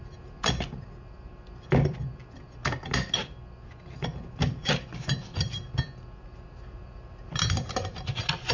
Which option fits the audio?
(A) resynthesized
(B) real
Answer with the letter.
B